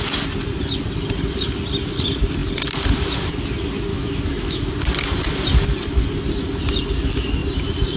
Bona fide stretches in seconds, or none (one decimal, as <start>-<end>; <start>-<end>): 0.0-3.9; 4.7-8.0

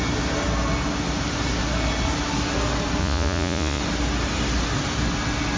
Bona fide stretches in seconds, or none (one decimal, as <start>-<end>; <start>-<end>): 0.0-3.0; 3.8-5.6